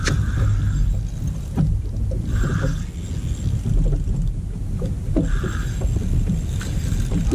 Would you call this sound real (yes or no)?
yes